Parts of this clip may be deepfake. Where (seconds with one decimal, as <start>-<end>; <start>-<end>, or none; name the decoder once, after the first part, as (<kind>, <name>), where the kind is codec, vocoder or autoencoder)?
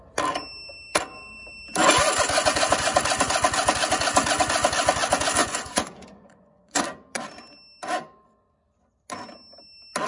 5.4-6.8 (vocoder, Vocos)